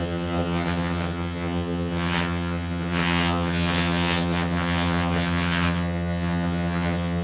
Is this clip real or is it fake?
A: fake